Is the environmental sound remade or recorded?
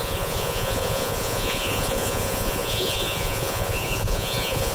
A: remade